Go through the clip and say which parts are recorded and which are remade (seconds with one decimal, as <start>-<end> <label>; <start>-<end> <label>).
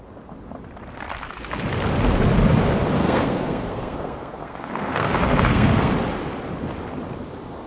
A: 0.0-3.0 recorded; 3.0-5.9 remade; 5.9-7.7 recorded